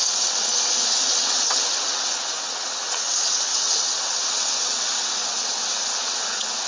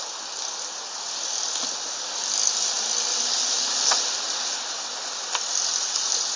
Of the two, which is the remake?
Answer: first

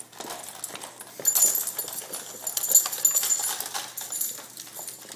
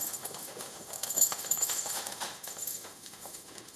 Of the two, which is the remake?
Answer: second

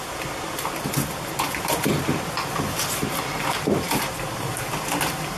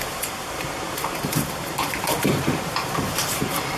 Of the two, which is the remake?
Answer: second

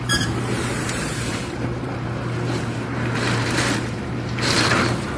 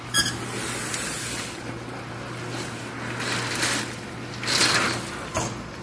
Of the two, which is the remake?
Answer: first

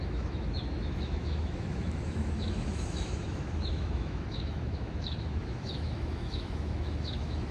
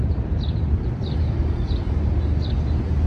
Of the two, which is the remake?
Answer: first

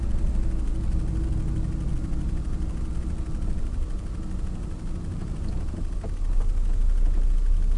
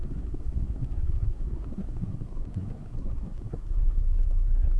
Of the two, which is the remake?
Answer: second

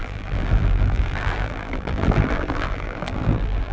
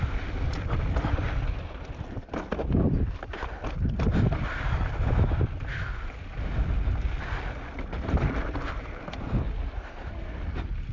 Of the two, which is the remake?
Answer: first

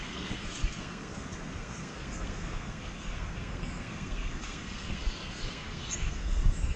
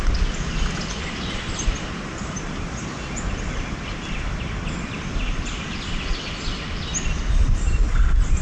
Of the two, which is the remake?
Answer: first